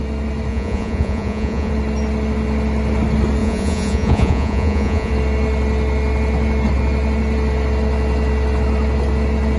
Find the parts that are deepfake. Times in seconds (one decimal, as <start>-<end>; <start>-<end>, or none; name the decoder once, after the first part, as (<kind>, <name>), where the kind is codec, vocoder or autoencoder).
0.5-1.7 (vocoder, Vocos); 3.4-5.1